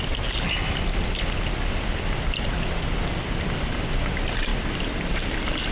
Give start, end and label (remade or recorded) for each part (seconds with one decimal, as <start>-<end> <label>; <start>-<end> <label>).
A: 0.0-5.7 recorded